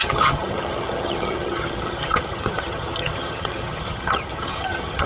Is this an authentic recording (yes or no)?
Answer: no